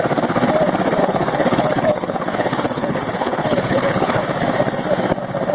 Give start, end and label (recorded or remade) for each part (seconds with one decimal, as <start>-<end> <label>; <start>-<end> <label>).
0.0-1.0 recorded; 1.0-4.2 remade; 4.2-5.5 recorded